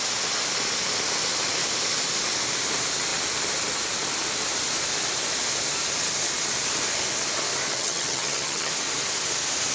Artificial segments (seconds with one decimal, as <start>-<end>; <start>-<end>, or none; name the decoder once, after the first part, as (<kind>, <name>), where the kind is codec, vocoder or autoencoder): 7.7-8.7 (vocoder, HiFi-GAN)